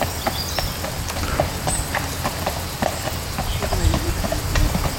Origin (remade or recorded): remade